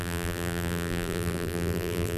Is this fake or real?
fake